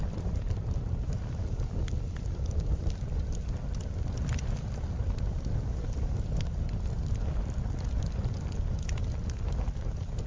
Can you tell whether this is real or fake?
real